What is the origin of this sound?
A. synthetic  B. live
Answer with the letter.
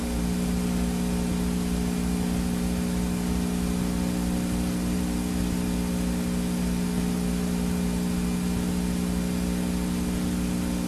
B